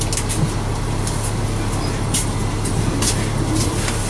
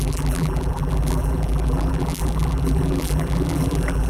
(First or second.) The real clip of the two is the first